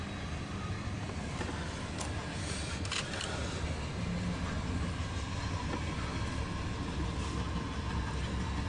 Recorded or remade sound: recorded